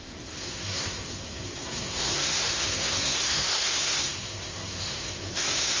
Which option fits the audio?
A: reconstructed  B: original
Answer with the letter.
A